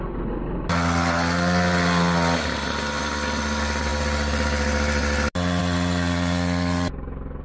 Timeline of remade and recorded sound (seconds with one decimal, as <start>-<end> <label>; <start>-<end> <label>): 0.0-7.4 recorded